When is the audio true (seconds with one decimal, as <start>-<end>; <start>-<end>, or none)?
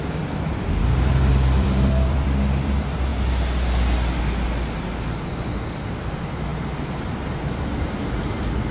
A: 0.8-1.3; 3.1-5.1; 6.5-7.0